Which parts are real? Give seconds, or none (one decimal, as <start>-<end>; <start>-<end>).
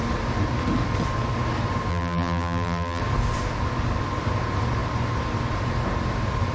0.0-1.9; 3.0-6.5